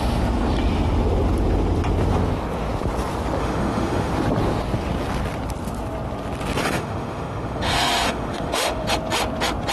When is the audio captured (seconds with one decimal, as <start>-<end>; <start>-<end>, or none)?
0.0-3.4; 4.1-6.6; 8.9-9.7

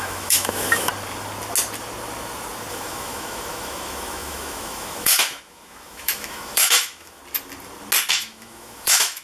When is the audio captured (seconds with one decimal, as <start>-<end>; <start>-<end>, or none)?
0.9-2.7; 7.2-8.1

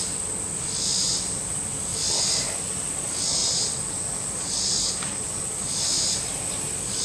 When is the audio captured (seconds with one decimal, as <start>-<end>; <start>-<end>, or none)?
0.0-7.0

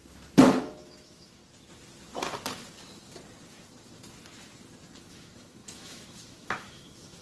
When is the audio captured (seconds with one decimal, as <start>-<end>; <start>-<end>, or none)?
0.0-0.6; 1.4-5.0

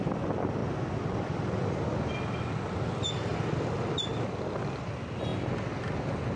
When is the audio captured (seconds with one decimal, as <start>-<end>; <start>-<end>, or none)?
0.0-6.4